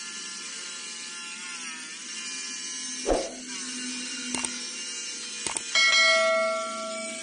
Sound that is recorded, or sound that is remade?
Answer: recorded